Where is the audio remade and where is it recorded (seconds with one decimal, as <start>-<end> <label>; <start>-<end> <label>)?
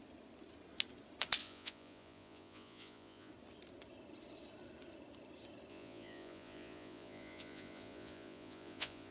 0.0-1.4 recorded; 1.4-3.3 remade; 3.3-5.7 recorded; 5.7-9.1 remade